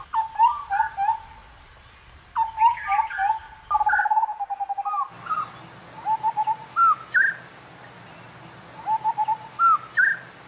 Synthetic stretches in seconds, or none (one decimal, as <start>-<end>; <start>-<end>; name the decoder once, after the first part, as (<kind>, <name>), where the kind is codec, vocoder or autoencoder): none